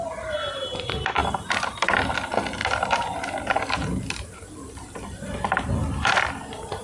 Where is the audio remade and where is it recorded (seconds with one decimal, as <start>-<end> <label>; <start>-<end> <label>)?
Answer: 0.0-6.8 remade